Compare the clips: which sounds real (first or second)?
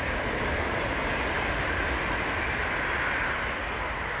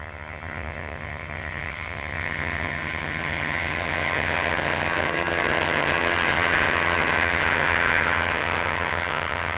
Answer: first